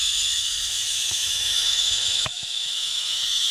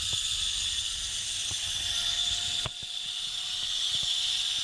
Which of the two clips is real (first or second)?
second